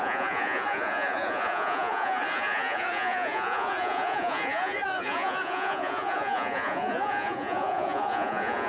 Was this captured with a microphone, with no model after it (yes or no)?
no